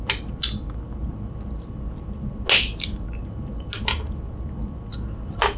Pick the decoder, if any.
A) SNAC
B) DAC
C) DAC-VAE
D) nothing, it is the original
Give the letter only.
D